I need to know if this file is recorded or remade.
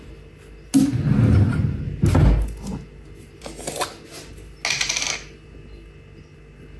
recorded